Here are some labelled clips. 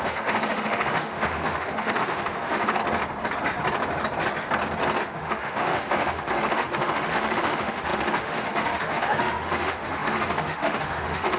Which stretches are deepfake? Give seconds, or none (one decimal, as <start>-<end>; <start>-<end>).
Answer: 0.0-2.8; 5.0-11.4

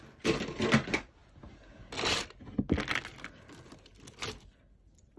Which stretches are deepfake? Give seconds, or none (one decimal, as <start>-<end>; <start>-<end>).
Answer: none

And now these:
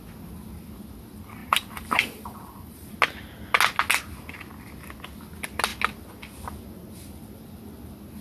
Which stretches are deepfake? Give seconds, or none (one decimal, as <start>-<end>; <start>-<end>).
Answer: 1.4-2.9

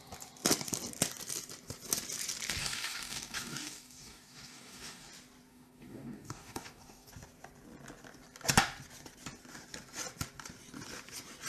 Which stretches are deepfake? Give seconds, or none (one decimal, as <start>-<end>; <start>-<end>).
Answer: 2.6-5.1; 5.5-7.1